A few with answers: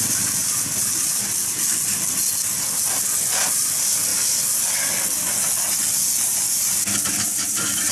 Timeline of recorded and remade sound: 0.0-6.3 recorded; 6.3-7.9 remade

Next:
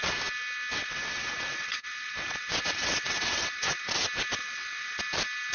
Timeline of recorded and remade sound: 0.0-0.8 recorded; 0.8-3.9 remade; 3.9-4.4 recorded; 4.4-5.0 remade; 5.0-5.5 recorded

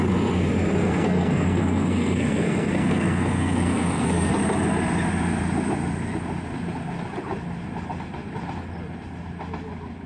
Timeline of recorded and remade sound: 0.0-0.8 recorded; 0.8-4.3 remade; 4.3-10.1 recorded

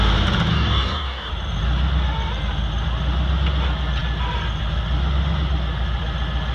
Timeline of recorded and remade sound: 0.0-0.5 recorded; 0.5-1.3 remade; 1.3-6.5 recorded